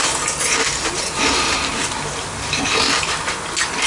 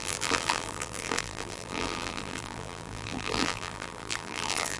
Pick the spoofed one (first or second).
second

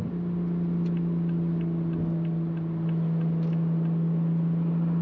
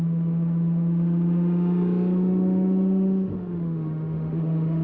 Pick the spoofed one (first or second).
second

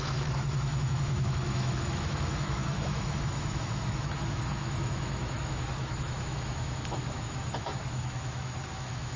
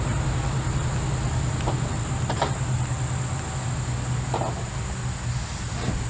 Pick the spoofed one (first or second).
first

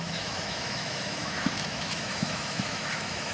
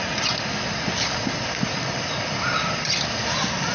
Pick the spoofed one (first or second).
first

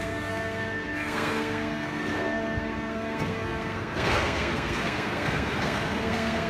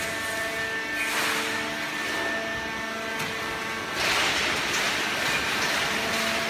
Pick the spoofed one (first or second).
first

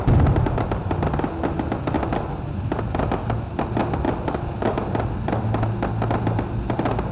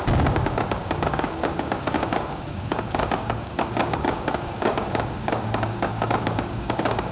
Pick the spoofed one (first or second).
second